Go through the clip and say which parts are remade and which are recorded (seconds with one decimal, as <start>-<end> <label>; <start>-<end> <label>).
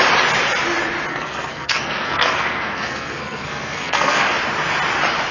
0.0-1.1 recorded; 1.1-4.3 remade; 4.3-5.3 recorded